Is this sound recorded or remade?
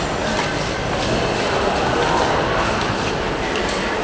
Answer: recorded